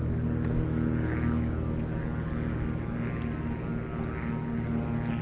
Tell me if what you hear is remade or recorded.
recorded